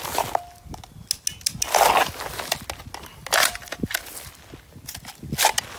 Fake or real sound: real